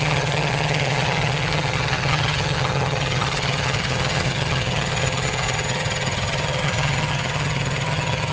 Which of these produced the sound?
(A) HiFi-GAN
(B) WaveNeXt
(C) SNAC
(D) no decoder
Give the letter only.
A